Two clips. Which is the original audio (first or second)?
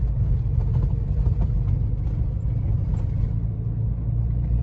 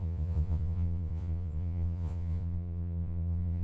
first